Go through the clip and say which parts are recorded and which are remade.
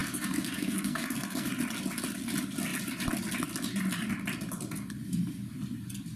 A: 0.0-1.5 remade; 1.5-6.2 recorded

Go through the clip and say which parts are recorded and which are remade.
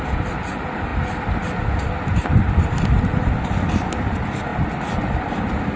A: 0.0-0.9 remade; 0.9-2.2 recorded; 2.2-4.5 remade; 4.5-5.2 recorded; 5.2-5.8 remade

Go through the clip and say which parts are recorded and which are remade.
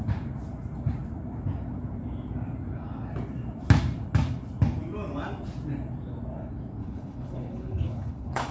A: 0.0-6.8 recorded; 6.8-8.5 remade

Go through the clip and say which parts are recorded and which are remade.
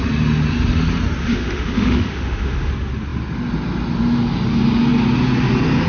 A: 0.0-1.2 recorded; 1.2-2.7 remade; 2.7-5.9 recorded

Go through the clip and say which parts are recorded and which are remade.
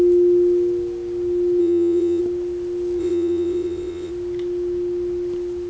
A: 0.0-1.6 recorded; 1.6-2.2 remade; 2.2-3.0 recorded; 3.0-4.1 remade; 4.1-5.7 recorded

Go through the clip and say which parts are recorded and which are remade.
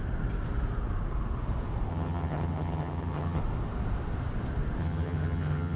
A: 0.0-1.9 recorded; 1.9-3.4 remade; 3.4-4.8 recorded; 4.8-5.8 remade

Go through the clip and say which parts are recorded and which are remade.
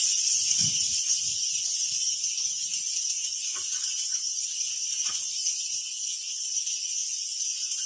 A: 0.0-0.6 recorded; 0.6-1.3 remade; 1.3-3.3 recorded; 3.3-6.6 remade; 6.6-7.0 recorded; 7.0-7.9 remade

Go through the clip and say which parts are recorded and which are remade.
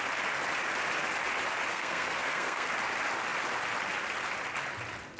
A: 0.0-1.7 recorded; 1.7-2.7 remade; 2.7-5.2 recorded